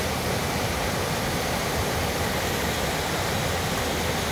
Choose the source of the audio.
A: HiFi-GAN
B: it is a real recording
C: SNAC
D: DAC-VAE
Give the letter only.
B